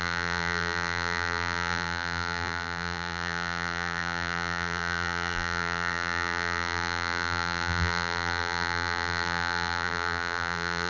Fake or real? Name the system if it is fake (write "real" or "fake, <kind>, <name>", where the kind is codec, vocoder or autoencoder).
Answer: fake, vocoder, BigVGAN v2